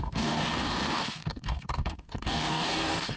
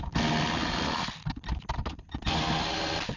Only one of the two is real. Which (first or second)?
second